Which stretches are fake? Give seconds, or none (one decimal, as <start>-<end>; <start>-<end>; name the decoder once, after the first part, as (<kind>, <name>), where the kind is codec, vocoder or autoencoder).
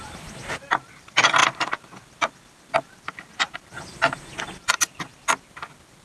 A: none